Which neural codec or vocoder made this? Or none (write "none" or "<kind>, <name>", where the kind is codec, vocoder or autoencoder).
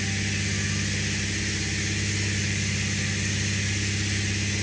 none